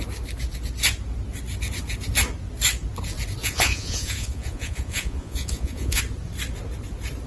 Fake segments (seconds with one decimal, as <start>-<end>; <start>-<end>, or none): 3.4-6.0

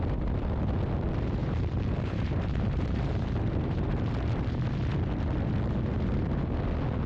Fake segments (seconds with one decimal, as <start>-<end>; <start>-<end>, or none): 1.4-4.8

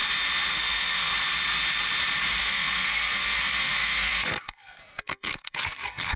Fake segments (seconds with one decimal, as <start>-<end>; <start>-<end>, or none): 0.5-1.1; 2.4-6.2

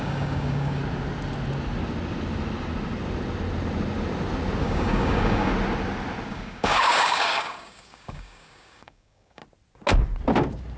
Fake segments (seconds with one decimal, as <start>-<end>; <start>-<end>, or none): 0.0-0.8; 4.6-5.5; 6.3-9.4

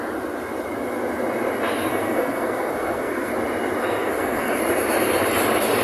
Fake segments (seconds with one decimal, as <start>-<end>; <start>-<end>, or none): 1.9-3.3; 3.8-4.6